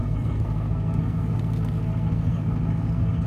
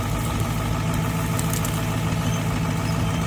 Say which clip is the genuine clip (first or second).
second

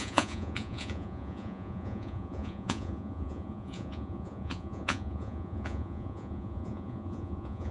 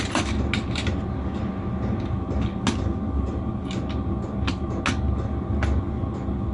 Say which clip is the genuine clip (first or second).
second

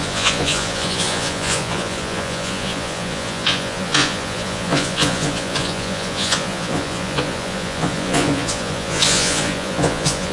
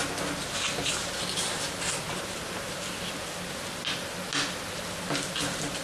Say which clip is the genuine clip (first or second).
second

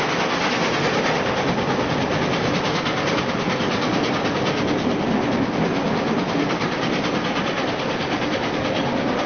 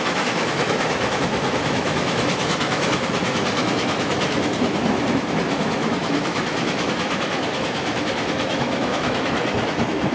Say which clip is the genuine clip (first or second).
first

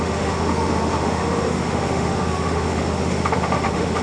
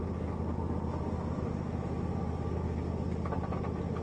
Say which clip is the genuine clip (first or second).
second